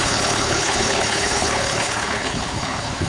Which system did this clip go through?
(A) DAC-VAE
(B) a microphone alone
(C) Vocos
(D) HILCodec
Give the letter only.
D